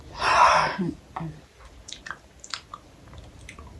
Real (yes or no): yes